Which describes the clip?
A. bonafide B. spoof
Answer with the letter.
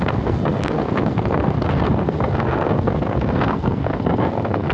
B